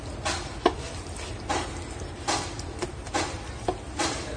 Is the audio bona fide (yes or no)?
yes